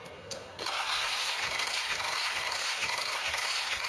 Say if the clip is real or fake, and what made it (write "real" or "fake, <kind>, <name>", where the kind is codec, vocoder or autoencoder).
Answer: fake, codec, SNAC